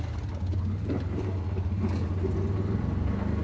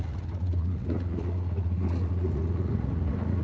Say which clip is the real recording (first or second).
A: first